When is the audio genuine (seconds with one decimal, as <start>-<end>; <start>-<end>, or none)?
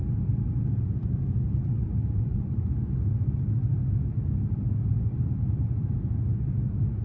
3.1-7.0